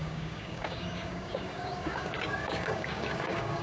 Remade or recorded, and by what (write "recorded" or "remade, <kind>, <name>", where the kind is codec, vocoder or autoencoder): remade, codec, DAC